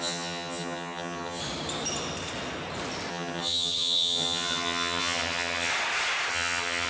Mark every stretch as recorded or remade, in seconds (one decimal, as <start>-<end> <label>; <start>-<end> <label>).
0.0-1.4 remade; 1.4-3.1 recorded; 3.1-5.7 remade; 5.7-6.3 recorded; 6.3-6.9 remade